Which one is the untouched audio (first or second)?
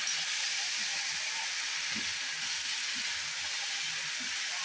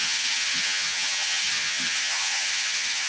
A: first